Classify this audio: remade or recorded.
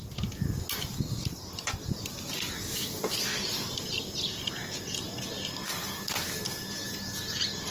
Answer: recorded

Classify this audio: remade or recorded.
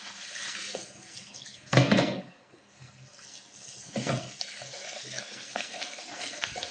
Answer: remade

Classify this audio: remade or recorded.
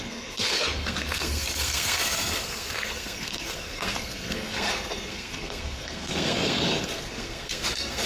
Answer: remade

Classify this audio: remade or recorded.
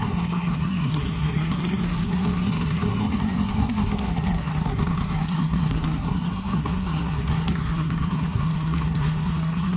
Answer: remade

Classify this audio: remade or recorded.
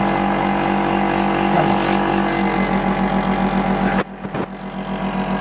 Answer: recorded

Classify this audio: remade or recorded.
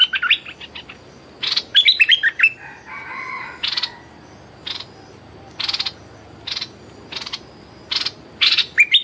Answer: recorded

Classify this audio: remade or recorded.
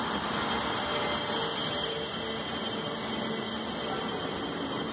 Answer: recorded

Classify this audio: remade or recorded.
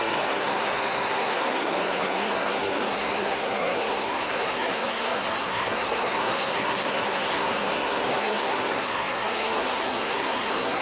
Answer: remade